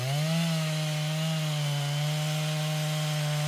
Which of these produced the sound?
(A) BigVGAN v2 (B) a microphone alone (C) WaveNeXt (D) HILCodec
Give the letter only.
B